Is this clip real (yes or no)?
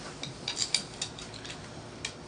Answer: yes